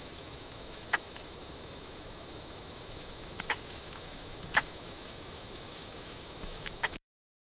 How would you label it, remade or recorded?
remade